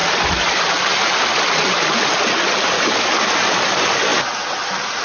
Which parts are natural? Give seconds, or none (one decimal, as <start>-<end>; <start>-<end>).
0.6-5.0